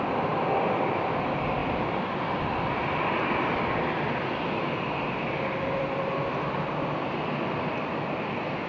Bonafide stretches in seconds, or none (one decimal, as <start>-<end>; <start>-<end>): 0.0-8.7